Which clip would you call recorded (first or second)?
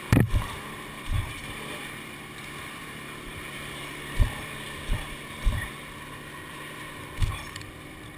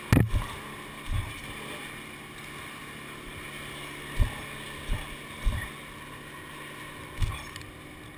second